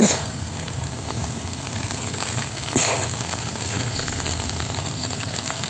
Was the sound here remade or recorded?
remade